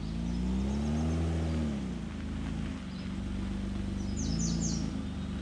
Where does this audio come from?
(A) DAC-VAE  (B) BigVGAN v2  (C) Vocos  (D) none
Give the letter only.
D